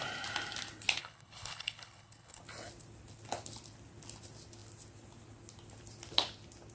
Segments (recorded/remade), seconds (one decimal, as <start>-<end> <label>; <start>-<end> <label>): 0.0-1.0 recorded; 1.0-2.4 remade; 2.4-6.7 recorded

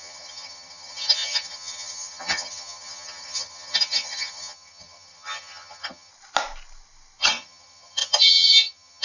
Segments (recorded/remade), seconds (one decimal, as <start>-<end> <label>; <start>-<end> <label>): 0.0-6.1 remade; 6.1-7.2 recorded; 7.2-9.0 remade

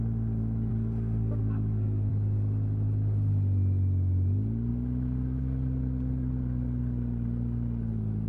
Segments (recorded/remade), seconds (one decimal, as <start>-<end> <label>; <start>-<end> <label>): 0.0-0.7 recorded; 0.7-2.1 remade; 2.1-8.3 recorded

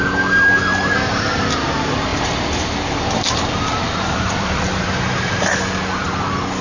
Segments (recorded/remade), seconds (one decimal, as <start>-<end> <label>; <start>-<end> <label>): 0.0-2.1 recorded; 2.1-5.3 remade; 5.3-6.6 recorded

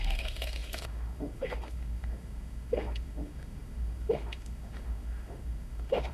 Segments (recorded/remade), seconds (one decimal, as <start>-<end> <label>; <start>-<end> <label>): 0.0-6.1 remade

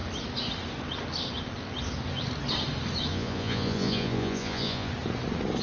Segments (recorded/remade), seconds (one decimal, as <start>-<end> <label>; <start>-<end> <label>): 0.0-3.1 recorded; 3.1-4.9 remade; 4.9-5.6 recorded

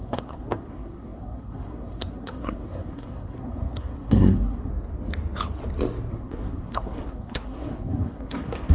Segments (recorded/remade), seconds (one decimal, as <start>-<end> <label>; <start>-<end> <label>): 0.0-4.7 remade; 4.7-6.1 recorded; 6.1-8.7 remade